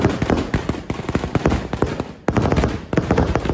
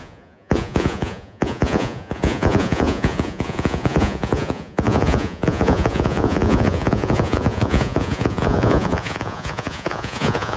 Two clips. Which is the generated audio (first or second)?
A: second